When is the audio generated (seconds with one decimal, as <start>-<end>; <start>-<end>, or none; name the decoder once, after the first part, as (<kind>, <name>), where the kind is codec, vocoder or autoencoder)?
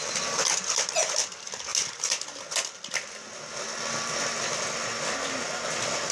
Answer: none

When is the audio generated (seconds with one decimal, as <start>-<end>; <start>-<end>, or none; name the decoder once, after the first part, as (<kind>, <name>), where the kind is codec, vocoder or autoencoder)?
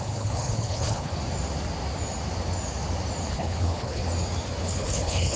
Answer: 0.0-1.1 (codec, HILCodec); 3.3-4.0; 4.6-5.4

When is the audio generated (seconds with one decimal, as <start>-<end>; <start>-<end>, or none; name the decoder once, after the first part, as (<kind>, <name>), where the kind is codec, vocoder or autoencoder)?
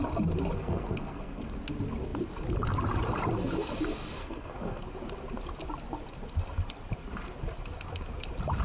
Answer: 0.6-1.5 (codec, SNAC); 4.2-4.8